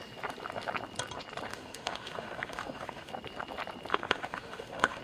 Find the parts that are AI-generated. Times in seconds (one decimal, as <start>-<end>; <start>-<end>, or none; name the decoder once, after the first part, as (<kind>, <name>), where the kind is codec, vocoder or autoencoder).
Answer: 1.5-3.1 (autoencoder, DAC-VAE); 3.9-5.0